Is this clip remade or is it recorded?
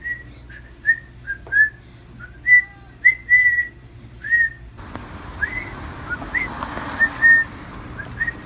recorded